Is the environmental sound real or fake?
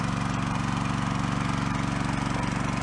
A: real